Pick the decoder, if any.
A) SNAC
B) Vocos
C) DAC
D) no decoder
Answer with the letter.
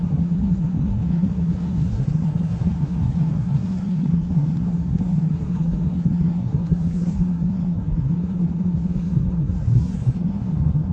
A